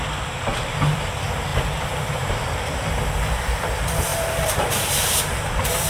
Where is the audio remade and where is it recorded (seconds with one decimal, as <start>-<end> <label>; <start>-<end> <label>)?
0.0-0.5 recorded; 0.5-1.1 remade; 1.1-1.5 recorded; 1.5-2.9 remade; 2.9-4.1 recorded; 4.1-5.9 remade